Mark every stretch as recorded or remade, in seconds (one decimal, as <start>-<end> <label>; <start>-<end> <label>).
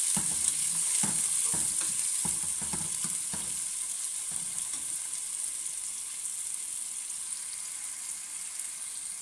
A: 0.0-0.6 recorded; 0.6-1.2 remade; 1.2-9.2 recorded